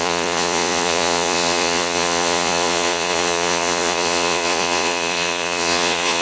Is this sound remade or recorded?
remade